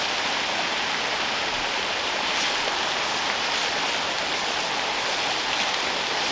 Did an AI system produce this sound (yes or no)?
no